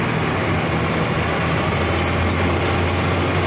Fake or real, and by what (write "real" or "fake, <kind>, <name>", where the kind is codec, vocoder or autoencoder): real